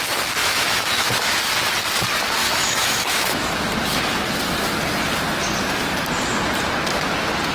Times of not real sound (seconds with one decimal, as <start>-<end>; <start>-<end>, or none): 0.4-1.4; 2.4-3.5